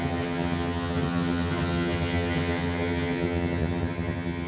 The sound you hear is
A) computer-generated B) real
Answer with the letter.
A